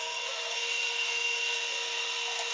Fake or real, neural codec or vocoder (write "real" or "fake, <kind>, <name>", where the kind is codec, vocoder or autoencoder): fake, codec, SNAC